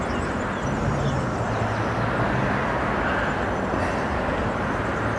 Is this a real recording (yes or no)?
yes